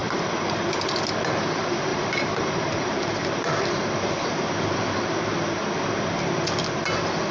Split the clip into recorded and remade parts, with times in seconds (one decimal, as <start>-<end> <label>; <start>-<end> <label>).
0.0-0.6 remade; 0.6-1.9 recorded; 1.9-4.1 remade; 4.1-7.3 recorded